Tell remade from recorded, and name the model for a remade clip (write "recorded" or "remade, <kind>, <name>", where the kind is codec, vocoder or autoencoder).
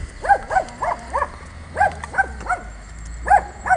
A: recorded